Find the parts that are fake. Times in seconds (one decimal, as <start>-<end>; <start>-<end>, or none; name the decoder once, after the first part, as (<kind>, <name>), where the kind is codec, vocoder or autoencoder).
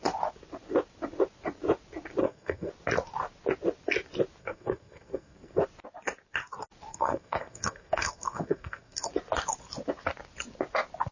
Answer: 2.2-2.7 (codec, SNAC); 4.4-5.6; 6.9-9.1